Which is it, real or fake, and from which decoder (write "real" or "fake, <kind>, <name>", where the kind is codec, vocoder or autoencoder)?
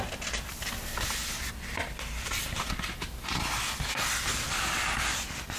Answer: real